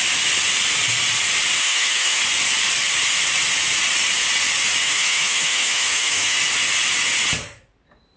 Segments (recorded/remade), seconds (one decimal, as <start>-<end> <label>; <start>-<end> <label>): 0.0-1.6 recorded; 1.6-2.2 remade; 2.2-4.8 recorded; 4.8-6.4 remade; 6.4-8.2 recorded